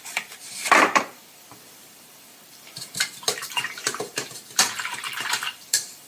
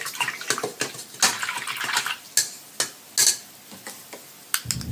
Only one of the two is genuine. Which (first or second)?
second